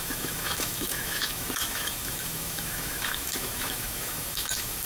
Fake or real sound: fake